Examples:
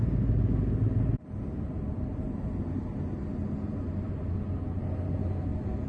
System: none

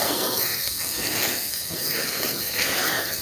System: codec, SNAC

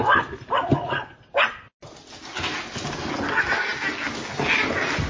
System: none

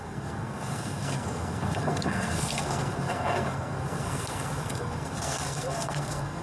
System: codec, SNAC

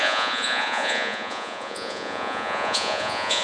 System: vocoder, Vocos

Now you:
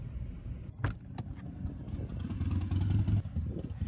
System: none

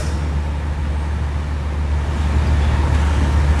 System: none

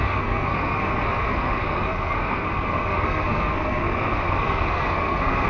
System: codec, SNAC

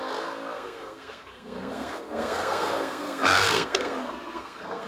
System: codec, SNAC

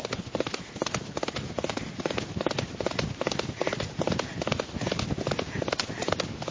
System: none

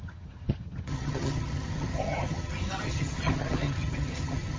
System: vocoder, HiFi-GAN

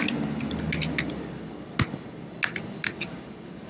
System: none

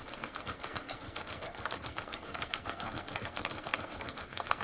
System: codec, SNAC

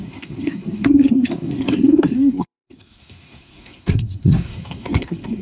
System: codec, SNAC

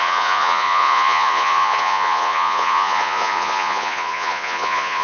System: vocoder, Vocos